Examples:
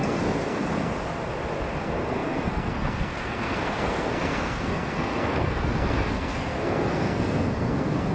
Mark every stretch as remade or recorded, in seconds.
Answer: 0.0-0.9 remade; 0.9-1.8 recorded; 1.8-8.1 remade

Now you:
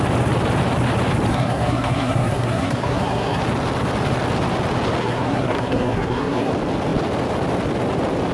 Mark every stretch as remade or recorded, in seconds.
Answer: 0.0-1.3 recorded; 1.3-3.4 remade; 3.4-5.0 recorded; 5.0-6.5 remade; 6.5-8.3 recorded

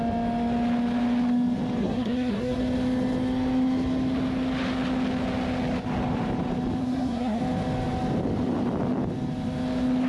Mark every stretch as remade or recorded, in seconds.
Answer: 0.0-1.8 recorded; 1.8-2.6 remade; 2.6-6.8 recorded; 6.8-7.4 remade; 7.4-10.1 recorded

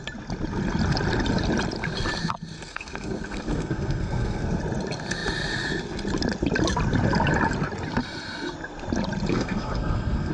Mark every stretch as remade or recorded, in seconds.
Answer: 0.0-2.7 recorded; 2.7-4.6 remade; 4.6-9.3 recorded; 9.3-10.3 remade

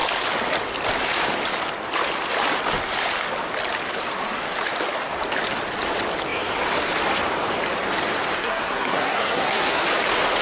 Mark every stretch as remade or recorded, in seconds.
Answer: 0.0-8.4 recorded; 8.4-9.8 remade; 9.8-10.4 recorded

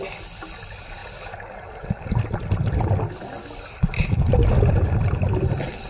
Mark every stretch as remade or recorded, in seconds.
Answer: 0.0-5.9 recorded